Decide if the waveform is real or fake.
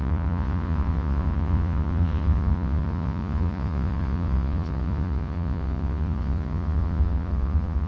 fake